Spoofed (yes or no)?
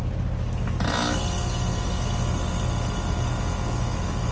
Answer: no